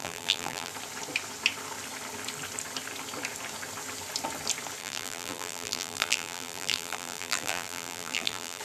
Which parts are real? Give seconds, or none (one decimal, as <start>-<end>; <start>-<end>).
0.7-4.8